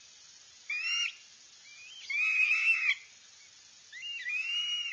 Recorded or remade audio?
recorded